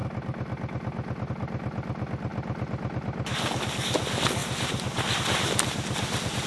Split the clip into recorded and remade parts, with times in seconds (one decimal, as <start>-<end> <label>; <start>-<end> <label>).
0.0-4.4 recorded; 4.4-5.2 remade; 5.2-6.5 recorded

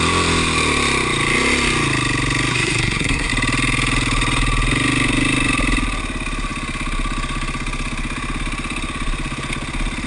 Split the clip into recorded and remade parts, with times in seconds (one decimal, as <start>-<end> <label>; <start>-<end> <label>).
0.0-2.5 recorded; 2.5-3.3 remade; 3.3-10.1 recorded

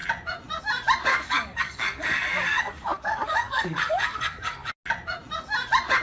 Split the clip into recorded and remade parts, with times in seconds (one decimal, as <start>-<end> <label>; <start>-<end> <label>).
0.0-1.1 recorded; 1.1-4.7 remade; 4.7-6.0 recorded